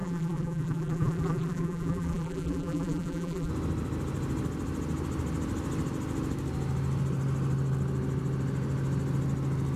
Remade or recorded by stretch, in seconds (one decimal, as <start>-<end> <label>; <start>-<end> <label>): 0.0-3.5 remade; 3.5-9.8 recorded